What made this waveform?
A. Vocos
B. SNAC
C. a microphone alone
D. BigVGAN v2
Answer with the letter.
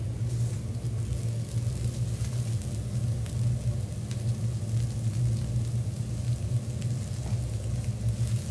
C